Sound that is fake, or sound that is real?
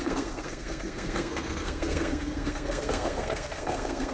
fake